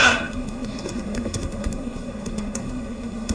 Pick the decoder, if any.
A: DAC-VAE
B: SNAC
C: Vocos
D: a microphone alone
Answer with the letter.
B